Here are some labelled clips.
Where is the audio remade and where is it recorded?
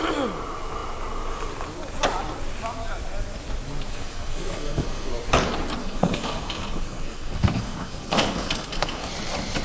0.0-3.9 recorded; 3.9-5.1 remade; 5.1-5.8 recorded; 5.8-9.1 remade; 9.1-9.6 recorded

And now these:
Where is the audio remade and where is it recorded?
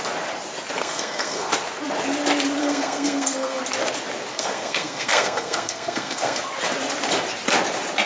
0.0-0.8 recorded; 0.8-1.5 remade; 1.5-2.6 recorded; 2.6-3.6 remade; 3.6-4.3 recorded; 4.3-6.4 remade; 6.4-8.1 recorded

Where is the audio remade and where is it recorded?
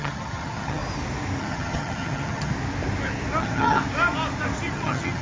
0.0-0.8 remade; 0.8-1.4 recorded; 1.4-2.5 remade; 2.5-3.4 recorded; 3.4-3.8 remade; 3.8-4.7 recorded; 4.7-5.2 remade